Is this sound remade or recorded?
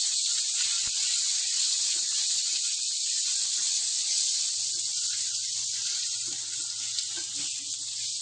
recorded